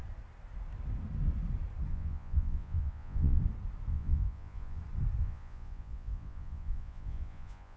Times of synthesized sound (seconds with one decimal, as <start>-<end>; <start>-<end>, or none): 1.9-3.4; 3.9-4.8; 5.2-7.8